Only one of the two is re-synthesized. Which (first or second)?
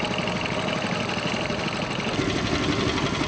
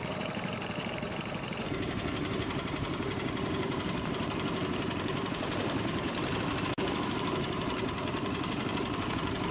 second